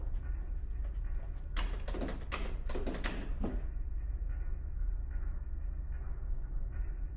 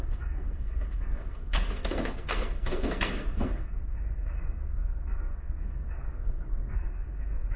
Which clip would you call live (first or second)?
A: first